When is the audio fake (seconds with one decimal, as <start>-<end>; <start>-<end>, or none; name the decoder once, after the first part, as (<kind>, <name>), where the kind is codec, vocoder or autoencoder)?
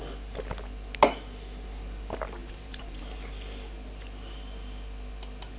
2.4-3.0 (vocoder, BigVGAN v2)